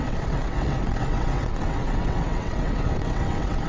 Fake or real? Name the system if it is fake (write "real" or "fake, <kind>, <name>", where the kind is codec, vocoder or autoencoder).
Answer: fake, vocoder, WaveNeXt